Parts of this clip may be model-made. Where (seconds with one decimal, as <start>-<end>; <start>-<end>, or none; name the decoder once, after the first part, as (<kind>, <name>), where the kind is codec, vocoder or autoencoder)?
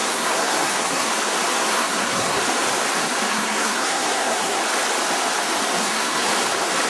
0.0-1.1 (codec, SNAC); 1.6-2.4; 3.3-4.6; 5.8-6.3